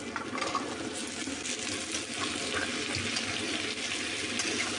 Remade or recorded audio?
recorded